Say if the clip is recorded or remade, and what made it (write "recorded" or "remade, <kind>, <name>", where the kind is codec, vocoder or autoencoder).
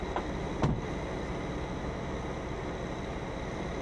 recorded